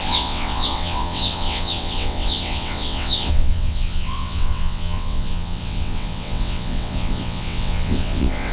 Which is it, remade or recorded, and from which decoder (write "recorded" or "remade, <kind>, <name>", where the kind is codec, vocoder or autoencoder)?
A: remade, vocoder, WaveNeXt